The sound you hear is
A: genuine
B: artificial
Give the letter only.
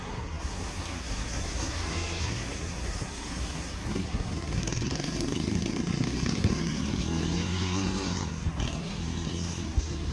B